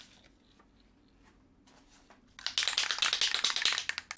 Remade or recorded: recorded